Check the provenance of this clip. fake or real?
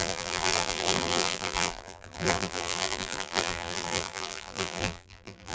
fake